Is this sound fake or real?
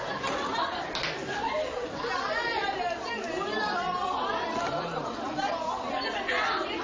real